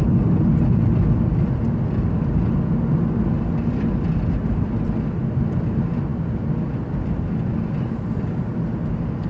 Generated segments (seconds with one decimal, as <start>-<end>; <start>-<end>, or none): none